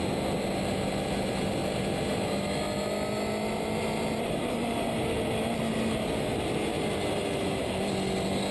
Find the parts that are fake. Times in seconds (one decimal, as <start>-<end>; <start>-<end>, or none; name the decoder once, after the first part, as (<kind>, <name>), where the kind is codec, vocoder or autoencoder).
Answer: none